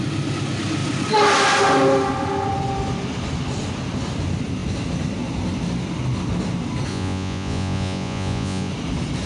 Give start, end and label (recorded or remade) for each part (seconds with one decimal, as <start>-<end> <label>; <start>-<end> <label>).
0.0-6.9 recorded; 6.9-8.7 remade; 8.7-9.3 recorded